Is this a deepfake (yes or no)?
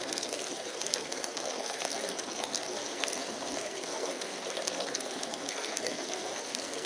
yes